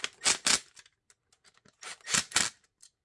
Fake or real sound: real